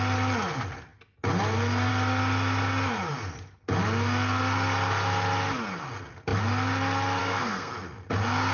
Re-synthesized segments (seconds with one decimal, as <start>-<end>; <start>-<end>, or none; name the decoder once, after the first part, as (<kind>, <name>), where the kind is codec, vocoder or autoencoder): 7.2-7.7 (codec, SNAC)